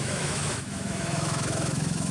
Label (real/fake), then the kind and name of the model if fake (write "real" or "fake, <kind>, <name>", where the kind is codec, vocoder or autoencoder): fake, autoencoder, DAC-VAE